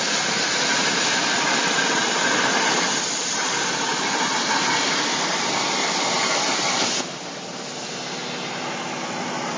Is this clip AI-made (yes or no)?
no